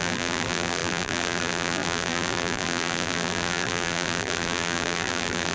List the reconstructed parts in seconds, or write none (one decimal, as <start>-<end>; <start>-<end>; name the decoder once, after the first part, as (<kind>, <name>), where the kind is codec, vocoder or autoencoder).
0.0-5.5 (vocoder, BigVGAN v2)